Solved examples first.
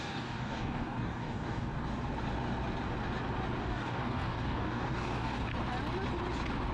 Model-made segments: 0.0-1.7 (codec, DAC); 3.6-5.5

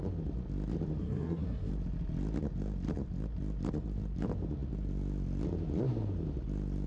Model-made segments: 1.0-1.7 (codec, SNAC)